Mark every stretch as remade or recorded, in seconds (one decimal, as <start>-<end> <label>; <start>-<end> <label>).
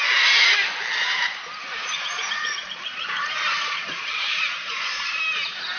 0.0-1.7 recorded; 1.7-5.2 remade; 5.2-5.8 recorded